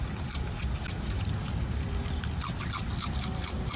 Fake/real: fake